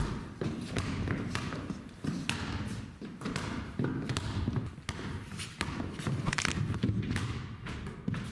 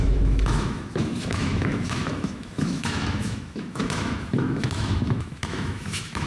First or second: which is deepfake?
second